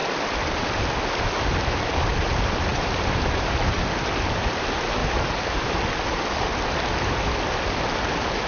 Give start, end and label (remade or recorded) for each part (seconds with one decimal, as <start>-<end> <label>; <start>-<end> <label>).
0.0-2.7 recorded; 2.7-3.8 remade; 3.8-5.0 recorded; 5.0-5.6 remade; 5.6-8.5 recorded